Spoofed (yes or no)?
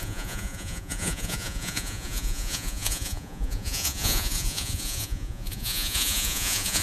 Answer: yes